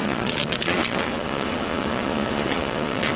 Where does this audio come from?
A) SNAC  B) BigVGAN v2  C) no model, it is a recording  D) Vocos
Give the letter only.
D